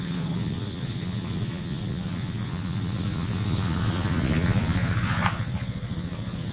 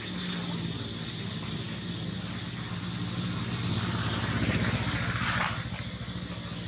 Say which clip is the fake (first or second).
first